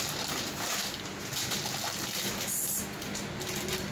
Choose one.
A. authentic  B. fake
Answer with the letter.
A